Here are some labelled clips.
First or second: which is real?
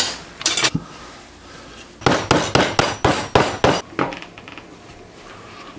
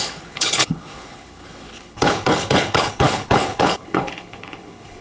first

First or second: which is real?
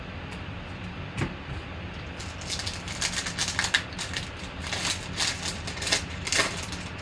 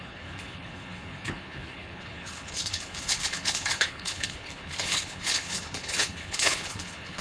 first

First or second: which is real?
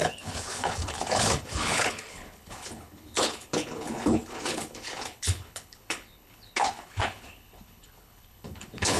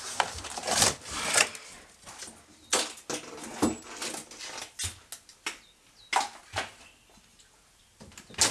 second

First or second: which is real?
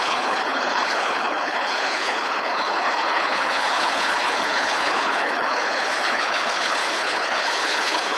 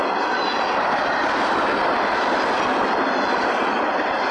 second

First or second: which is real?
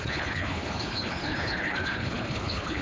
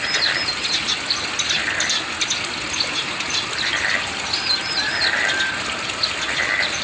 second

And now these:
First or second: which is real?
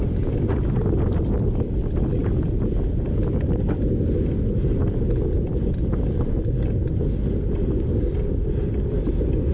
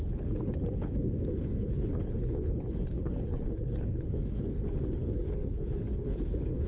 first